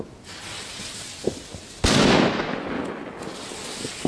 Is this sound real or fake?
real